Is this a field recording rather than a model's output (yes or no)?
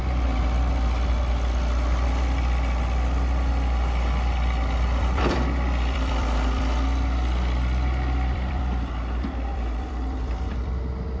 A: no